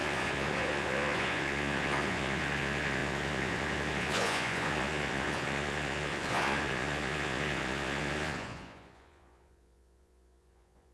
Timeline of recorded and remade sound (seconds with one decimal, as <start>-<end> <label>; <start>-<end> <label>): 0.0-10.9 remade